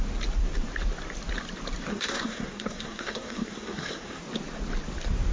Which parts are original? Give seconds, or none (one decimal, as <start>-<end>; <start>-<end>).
0.0-1.9; 4.2-5.3